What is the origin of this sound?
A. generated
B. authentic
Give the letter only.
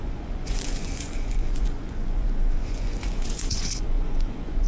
A